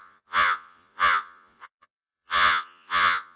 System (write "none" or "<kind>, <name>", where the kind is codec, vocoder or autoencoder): vocoder, Vocos